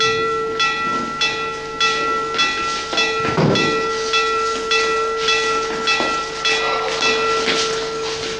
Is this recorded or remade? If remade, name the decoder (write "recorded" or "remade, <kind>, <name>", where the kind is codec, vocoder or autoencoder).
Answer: recorded